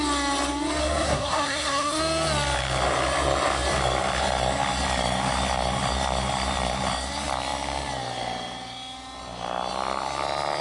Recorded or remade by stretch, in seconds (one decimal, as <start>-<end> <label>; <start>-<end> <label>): 0.0-0.8 recorded; 0.8-2.0 remade; 2.0-10.6 recorded